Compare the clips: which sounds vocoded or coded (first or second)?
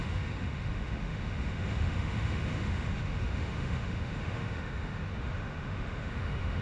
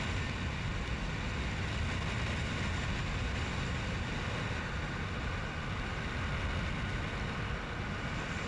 first